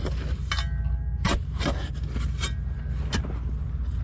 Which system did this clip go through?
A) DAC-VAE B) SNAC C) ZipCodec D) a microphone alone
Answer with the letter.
D